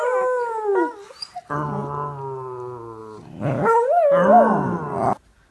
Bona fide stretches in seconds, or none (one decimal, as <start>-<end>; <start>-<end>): 0.0-5.5